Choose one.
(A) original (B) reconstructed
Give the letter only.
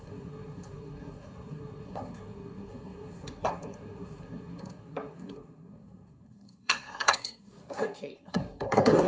B